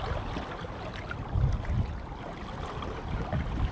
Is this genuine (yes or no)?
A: yes